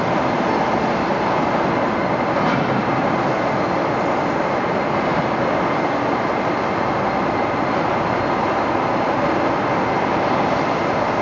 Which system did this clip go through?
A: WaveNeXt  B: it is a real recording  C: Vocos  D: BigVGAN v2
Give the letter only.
B